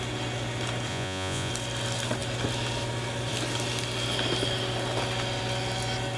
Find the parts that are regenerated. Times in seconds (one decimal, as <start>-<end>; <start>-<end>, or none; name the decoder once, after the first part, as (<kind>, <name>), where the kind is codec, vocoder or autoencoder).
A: 0.9-1.5 (vocoder, Vocos)